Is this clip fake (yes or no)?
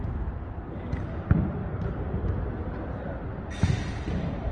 no